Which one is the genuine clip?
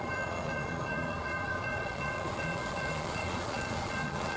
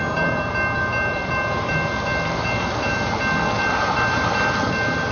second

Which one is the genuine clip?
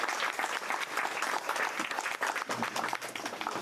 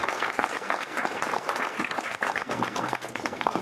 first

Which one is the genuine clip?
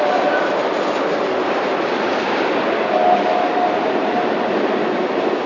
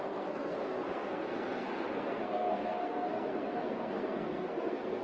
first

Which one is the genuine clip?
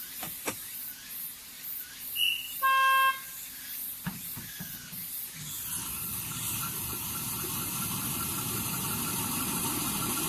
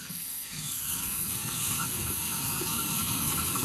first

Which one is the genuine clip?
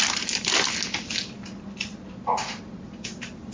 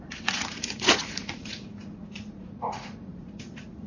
first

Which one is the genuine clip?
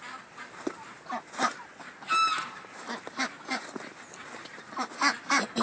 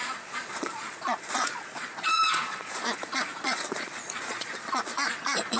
first